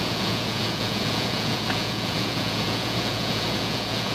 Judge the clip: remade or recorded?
remade